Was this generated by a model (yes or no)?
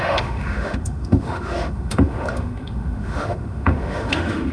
yes